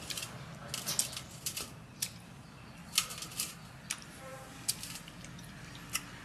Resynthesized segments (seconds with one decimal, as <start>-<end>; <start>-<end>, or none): none